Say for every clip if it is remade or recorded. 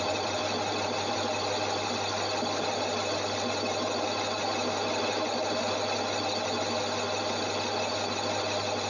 recorded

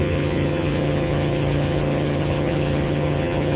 remade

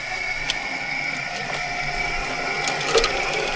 recorded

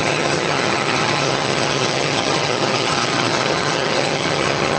remade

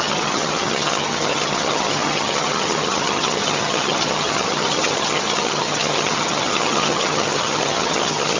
remade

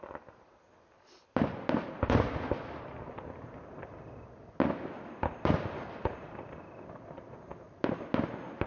recorded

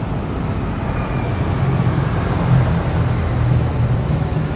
recorded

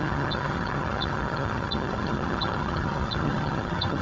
remade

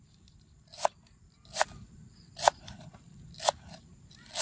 recorded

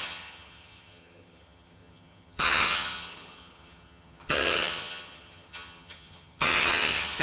remade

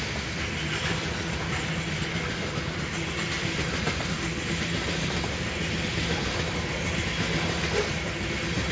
recorded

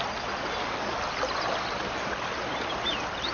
recorded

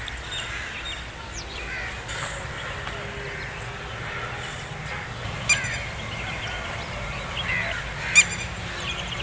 recorded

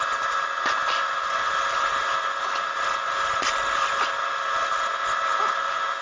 recorded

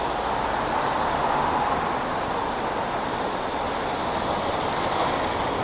recorded